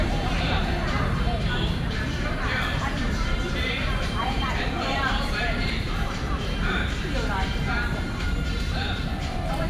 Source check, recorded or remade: remade